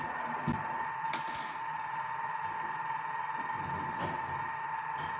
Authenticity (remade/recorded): recorded